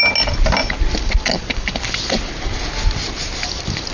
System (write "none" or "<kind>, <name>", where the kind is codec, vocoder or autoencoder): none